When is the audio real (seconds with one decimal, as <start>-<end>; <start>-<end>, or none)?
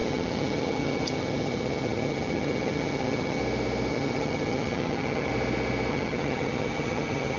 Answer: 3.4-3.9; 5.3-5.9